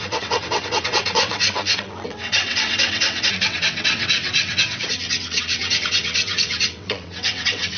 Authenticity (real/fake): fake